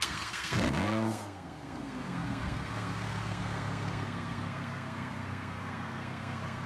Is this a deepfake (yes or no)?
yes